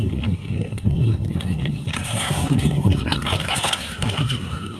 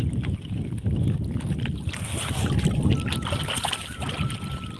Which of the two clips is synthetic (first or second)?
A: first